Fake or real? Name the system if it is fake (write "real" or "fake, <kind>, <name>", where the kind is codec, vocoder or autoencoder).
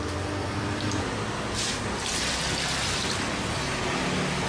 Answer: real